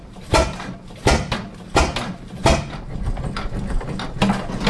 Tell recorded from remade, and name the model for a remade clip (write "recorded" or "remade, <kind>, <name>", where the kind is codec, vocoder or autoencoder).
recorded